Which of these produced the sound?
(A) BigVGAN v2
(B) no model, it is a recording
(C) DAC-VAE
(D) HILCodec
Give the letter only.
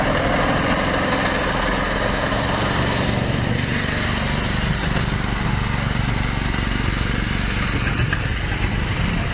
B